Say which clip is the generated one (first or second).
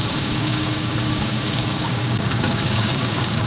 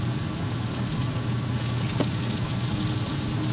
first